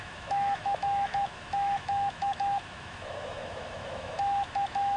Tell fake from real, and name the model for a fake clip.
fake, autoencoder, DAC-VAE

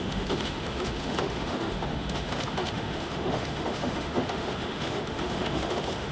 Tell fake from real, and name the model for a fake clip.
fake, autoencoder, DAC-VAE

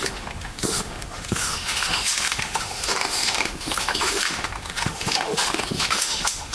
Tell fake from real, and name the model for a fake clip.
fake, autoencoder, DAC-VAE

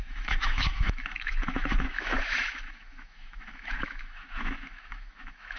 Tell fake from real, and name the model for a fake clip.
fake, autoencoder, DAC-VAE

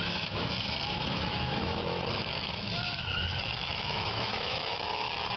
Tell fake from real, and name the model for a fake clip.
fake, autoencoder, DAC-VAE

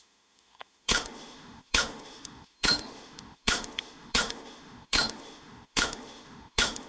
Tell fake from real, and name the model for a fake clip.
fake, autoencoder, DAC-VAE